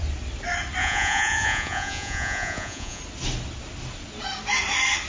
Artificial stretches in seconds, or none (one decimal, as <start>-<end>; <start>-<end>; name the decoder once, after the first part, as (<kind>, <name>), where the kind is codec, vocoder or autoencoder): 0.8-3.0 (vocoder, Vocos)